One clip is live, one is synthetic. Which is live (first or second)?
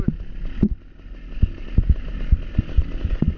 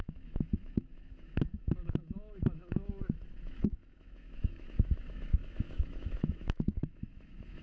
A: first